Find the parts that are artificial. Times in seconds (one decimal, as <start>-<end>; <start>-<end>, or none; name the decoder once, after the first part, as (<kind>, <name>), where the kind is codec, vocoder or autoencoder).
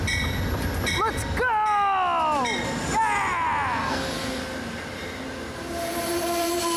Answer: 3.8-4.4 (codec, SNAC)